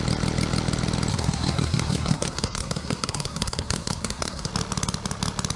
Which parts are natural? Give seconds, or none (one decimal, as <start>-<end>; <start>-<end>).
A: 0.0-1.1; 4.5-5.6